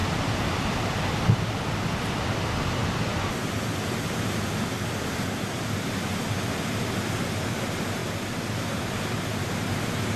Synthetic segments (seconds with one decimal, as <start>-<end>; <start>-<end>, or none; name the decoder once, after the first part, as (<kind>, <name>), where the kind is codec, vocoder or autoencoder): none